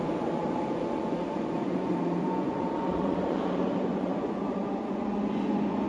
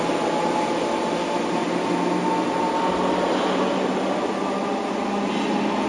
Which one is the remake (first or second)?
first